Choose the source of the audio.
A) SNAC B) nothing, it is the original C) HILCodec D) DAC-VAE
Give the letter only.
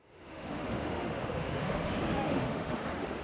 D